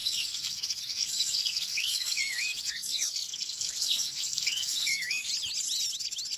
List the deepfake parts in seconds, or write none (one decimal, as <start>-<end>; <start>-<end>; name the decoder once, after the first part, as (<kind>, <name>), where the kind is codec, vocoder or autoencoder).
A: 0.0-5.3 (codec, SNAC)